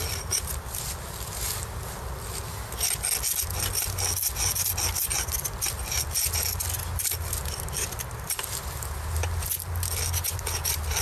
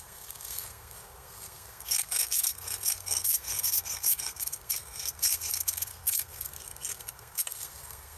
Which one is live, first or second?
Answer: first